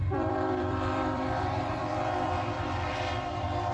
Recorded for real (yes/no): no